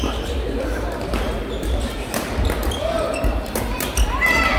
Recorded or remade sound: recorded